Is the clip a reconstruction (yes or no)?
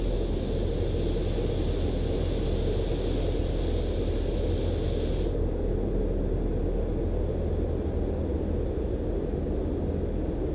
no